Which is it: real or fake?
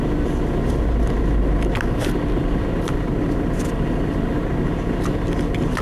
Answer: real